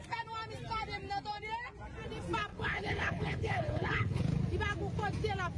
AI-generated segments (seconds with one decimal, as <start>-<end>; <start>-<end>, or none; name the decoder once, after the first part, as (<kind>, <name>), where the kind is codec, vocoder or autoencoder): 2.5-4.2 (codec, HILCodec)

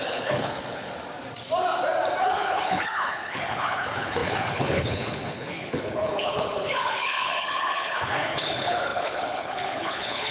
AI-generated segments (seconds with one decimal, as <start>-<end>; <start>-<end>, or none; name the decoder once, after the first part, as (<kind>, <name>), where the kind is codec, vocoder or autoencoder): 0.0-0.9 (codec, HILCodec); 2.2-10.3

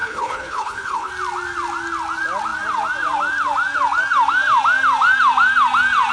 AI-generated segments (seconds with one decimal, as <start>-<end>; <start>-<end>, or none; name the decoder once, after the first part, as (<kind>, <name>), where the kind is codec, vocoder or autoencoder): 0.0-1.1 (codec, HILCodec)

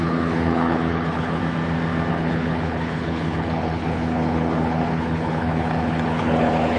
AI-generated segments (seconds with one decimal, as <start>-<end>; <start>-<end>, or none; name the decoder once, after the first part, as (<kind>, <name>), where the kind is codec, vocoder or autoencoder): 0.0-1.4 (codec, HILCodec); 2.1-6.8

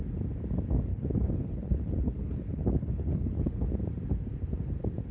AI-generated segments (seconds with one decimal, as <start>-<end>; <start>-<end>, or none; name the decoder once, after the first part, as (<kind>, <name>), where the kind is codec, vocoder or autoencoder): 0.9-3.8 (codec, HILCodec)

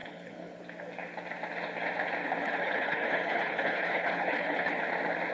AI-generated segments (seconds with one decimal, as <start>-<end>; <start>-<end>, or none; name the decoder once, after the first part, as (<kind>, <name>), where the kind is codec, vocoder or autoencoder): 0.0-0.6 (codec, HILCodec); 2.2-4.8